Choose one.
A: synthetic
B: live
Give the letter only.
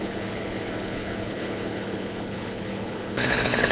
A